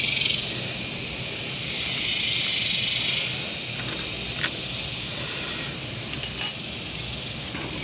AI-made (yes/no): no